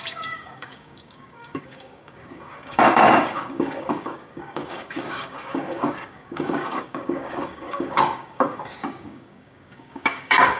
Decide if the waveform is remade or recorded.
remade